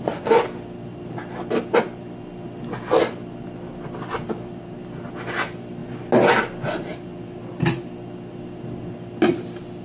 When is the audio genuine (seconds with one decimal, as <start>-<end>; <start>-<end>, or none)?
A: 0.0-9.8